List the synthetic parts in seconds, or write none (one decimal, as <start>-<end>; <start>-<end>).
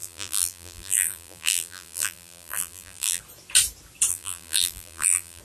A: 0.0-3.2; 4.1-5.4